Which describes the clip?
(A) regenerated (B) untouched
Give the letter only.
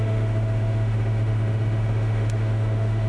A